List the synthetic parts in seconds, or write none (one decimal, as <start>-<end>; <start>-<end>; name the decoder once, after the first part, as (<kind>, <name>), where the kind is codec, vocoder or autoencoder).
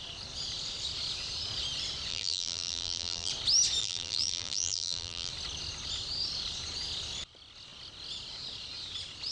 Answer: 2.1-3.3 (vocoder, BigVGAN v2); 3.8-5.3